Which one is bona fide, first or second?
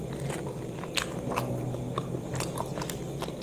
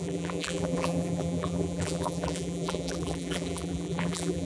first